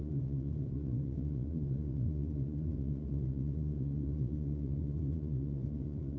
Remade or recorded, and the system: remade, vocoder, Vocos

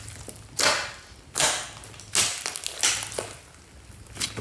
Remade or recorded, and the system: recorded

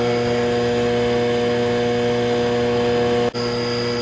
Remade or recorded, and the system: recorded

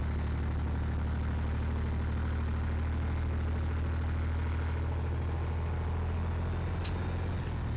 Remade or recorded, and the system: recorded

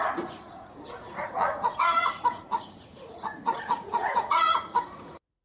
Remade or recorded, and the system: remade, vocoder, Vocos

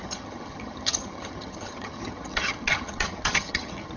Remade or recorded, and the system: remade, vocoder, HiFi-GAN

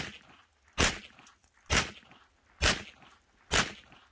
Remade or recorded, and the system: recorded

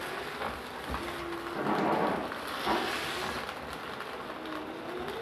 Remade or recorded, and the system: recorded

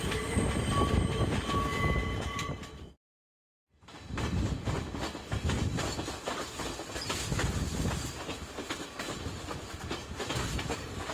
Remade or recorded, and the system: recorded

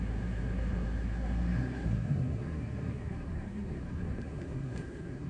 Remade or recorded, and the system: remade, codec, SNAC